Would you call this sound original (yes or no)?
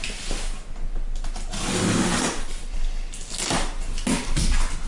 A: yes